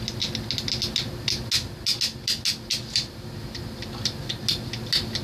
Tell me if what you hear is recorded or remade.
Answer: recorded